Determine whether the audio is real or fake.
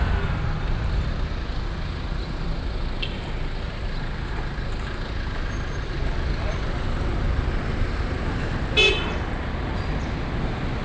real